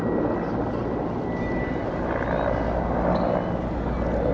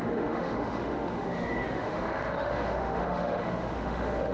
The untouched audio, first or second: first